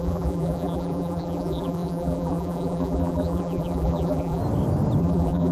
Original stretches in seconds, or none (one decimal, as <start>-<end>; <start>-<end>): 4.4-5.0